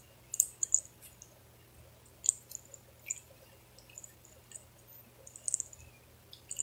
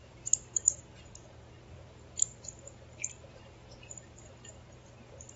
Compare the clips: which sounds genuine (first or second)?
first